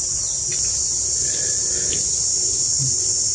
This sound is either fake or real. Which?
real